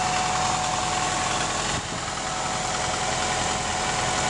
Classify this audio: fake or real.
real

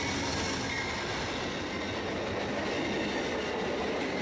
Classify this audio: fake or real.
real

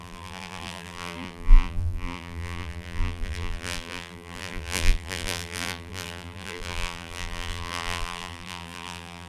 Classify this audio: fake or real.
fake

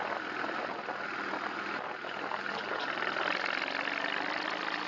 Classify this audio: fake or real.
real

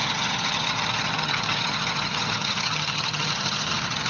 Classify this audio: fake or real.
fake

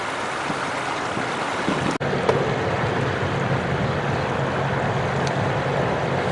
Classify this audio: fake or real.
real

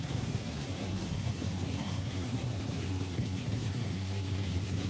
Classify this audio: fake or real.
fake